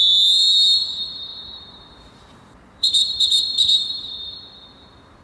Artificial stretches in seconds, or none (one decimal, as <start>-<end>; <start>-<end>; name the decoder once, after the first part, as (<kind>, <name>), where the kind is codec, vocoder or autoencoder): 1.3-4.4 (vocoder, BigVGAN v2)